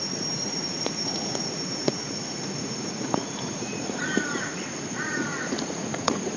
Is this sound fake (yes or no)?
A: yes